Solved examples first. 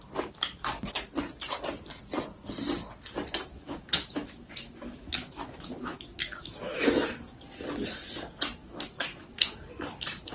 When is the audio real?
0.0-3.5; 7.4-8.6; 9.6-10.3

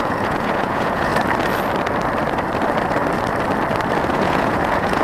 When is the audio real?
1.1-4.1

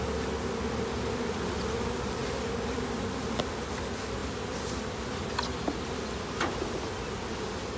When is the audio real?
0.0-7.8